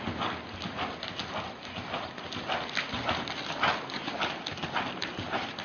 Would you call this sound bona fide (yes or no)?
yes